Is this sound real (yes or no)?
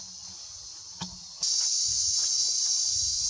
yes